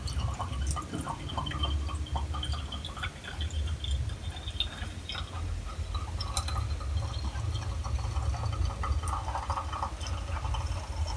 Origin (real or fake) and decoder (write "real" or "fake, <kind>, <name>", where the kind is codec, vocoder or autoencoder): real